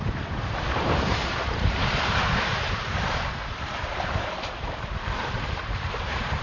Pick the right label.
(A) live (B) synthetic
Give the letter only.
B